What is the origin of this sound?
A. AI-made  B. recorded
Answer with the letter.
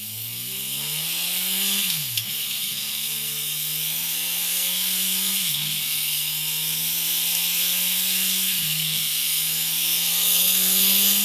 A